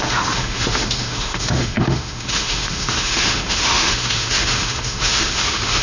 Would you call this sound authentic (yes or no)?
no